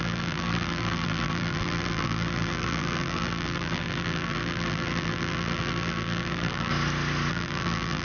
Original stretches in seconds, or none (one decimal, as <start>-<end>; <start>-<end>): 6.7-7.3